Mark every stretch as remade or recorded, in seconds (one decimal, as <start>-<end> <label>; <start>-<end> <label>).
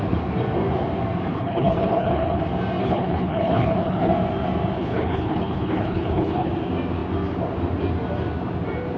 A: 0.0-1.3 recorded; 1.3-2.4 remade; 2.4-2.8 recorded; 2.8-4.1 remade; 4.1-4.8 recorded; 4.8-6.5 remade; 6.5-9.0 recorded